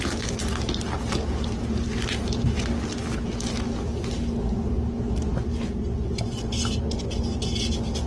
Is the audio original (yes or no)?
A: yes